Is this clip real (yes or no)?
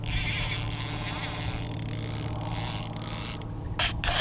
yes